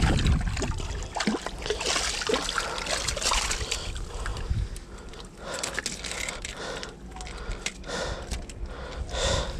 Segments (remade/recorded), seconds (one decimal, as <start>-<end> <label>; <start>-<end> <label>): 0.0-4.3 recorded; 4.3-5.8 remade; 5.8-9.6 recorded